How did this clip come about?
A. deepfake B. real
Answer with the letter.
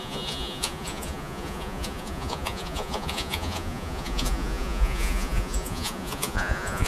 A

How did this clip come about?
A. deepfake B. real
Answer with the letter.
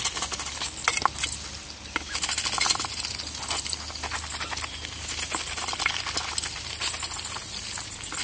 B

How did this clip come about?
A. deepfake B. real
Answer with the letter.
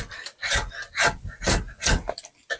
B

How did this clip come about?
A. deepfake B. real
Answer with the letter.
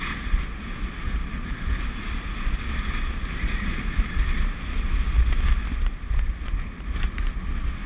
B